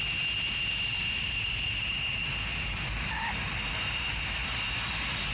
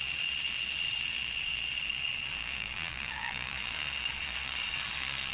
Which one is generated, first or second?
second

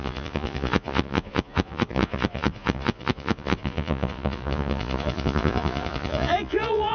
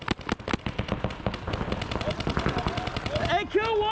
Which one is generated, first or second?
first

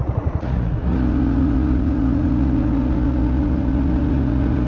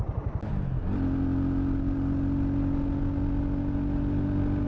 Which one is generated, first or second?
first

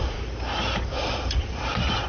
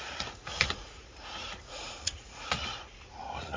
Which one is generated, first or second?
second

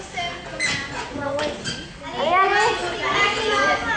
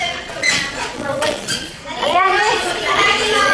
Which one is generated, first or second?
second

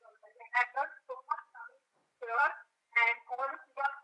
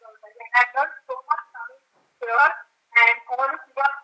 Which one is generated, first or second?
first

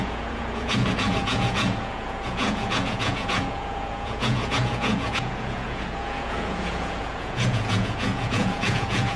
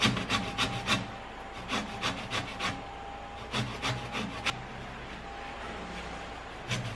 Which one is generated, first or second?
first